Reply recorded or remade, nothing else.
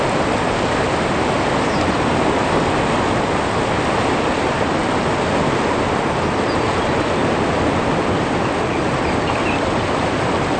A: recorded